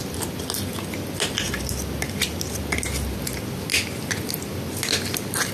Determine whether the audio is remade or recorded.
recorded